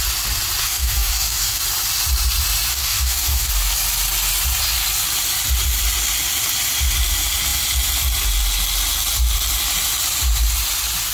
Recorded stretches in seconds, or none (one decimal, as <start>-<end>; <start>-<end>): 0.0-0.6; 1.6-2.7; 3.5-11.1